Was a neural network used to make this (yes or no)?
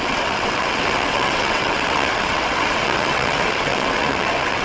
yes